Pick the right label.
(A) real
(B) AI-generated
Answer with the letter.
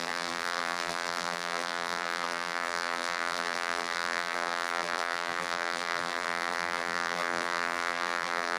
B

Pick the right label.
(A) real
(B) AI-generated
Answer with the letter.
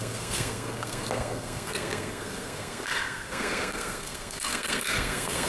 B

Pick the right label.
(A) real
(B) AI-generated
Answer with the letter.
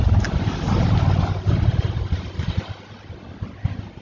A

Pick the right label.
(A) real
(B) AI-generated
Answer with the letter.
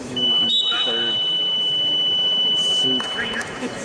B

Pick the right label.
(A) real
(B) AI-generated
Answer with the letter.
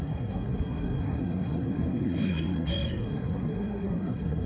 B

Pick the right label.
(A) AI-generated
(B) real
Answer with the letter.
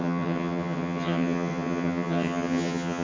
A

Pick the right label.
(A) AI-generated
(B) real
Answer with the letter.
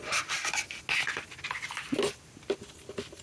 B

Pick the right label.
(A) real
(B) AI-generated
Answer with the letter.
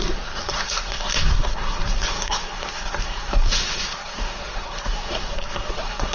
B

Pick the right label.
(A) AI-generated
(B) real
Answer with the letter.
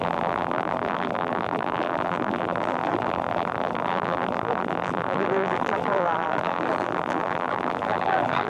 A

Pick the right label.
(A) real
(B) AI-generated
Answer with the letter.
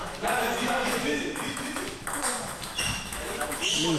B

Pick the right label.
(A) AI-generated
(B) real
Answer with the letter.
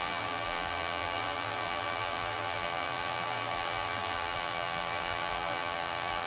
A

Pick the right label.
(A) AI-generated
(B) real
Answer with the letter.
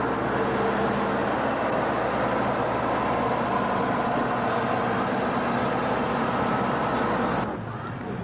B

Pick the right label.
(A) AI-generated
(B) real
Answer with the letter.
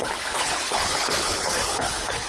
A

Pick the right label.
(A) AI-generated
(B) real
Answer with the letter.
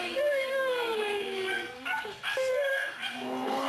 A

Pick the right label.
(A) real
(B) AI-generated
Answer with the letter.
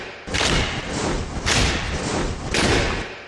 A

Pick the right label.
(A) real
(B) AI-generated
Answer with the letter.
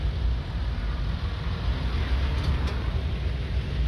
A